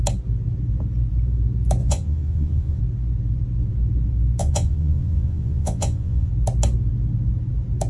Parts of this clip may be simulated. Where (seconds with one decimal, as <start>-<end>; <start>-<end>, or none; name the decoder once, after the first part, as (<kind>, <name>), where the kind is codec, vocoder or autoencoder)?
1.8-2.8 (vocoder, Vocos); 4.4-6.3